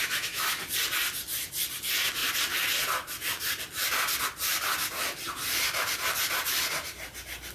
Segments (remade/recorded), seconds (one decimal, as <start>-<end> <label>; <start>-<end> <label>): 0.0-0.6 remade; 0.6-7.5 recorded